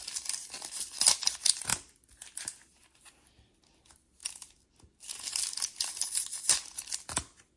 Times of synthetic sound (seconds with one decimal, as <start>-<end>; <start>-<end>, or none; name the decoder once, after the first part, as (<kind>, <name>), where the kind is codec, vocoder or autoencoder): none